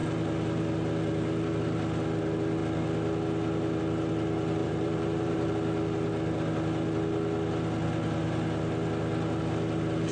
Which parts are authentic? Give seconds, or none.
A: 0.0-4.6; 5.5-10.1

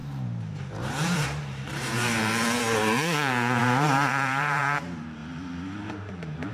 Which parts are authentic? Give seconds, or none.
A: 5.2-5.9

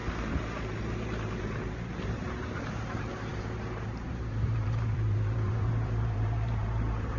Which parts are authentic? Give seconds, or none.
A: none

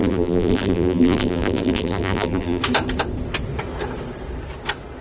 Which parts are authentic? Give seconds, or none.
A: 2.6-5.0

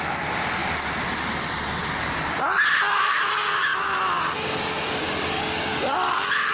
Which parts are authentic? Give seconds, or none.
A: 0.0-6.5

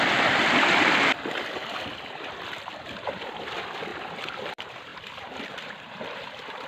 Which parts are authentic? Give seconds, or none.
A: none

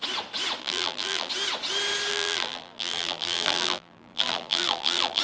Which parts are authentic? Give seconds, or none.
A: 0.0-0.6; 1.3-2.1

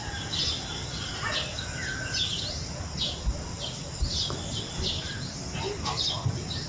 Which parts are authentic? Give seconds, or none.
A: 0.0-6.7